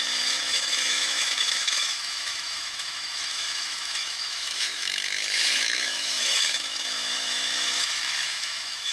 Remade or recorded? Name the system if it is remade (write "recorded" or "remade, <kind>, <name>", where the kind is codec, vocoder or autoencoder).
remade, autoencoder, DAC-VAE